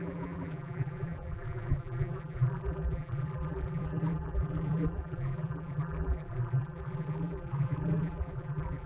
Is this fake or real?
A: fake